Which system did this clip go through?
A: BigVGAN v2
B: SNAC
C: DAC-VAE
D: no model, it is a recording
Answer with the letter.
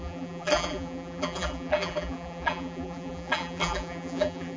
A